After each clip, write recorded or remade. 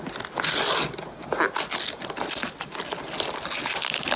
recorded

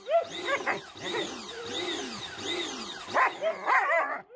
recorded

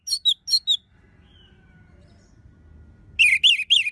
recorded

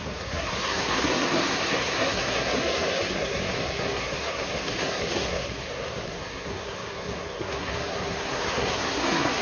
remade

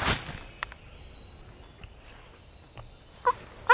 recorded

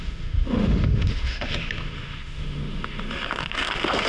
remade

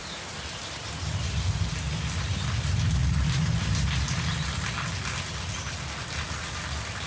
recorded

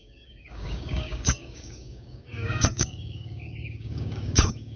remade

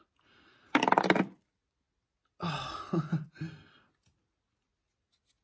recorded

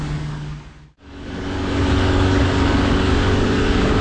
remade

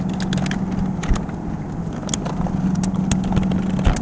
recorded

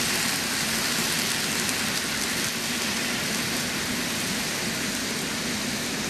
recorded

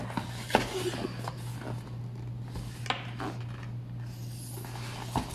recorded